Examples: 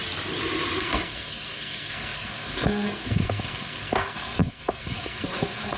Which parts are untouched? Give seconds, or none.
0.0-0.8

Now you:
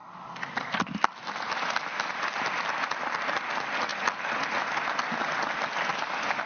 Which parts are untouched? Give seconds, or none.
0.0-6.5

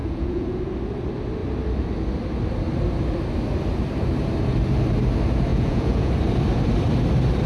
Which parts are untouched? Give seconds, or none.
0.6-5.5; 6.1-7.5